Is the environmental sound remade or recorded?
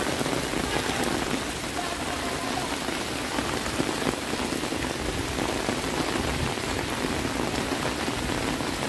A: recorded